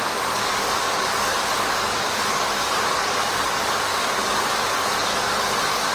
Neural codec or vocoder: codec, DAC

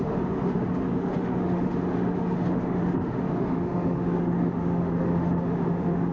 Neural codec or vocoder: autoencoder, DAC-VAE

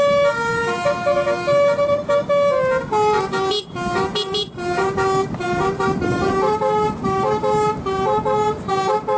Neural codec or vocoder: none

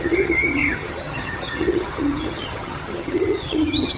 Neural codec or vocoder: vocoder, HiFi-GAN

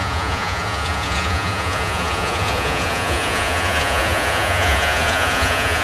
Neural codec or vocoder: vocoder, Vocos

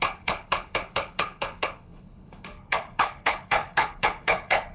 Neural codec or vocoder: codec, HILCodec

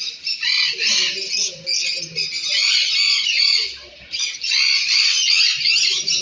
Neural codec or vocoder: none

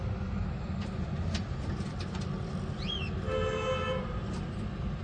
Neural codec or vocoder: none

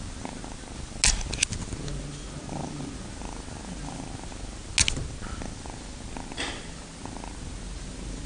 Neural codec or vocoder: none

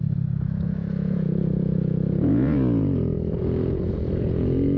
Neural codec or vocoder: vocoder, Vocos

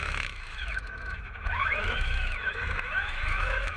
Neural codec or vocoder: autoencoder, DAC-VAE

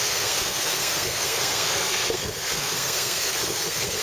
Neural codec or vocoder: codec, SNAC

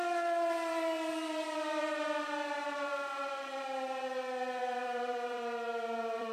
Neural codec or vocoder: vocoder, BigVGAN v2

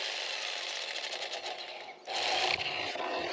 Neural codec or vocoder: none